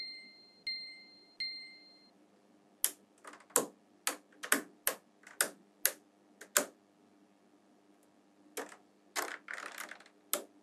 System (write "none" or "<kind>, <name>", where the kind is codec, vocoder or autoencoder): none